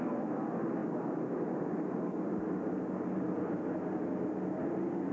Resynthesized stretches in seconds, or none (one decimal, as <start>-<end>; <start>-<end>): none